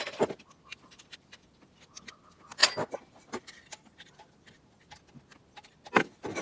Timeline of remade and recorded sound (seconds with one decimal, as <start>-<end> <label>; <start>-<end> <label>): 0.0-6.4 recorded